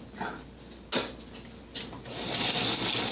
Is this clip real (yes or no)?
yes